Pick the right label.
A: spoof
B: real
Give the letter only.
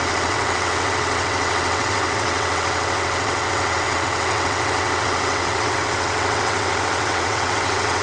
A